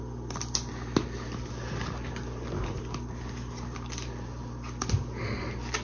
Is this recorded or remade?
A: recorded